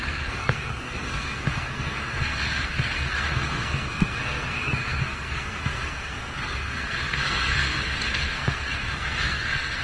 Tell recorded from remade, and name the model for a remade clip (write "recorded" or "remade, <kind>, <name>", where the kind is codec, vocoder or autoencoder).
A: remade, codec, SNAC